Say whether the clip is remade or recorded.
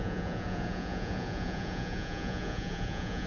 remade